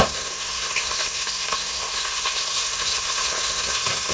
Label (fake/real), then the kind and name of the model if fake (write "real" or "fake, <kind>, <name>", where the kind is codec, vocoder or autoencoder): fake, codec, SNAC